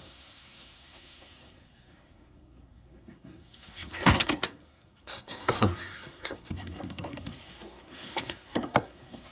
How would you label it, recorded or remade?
remade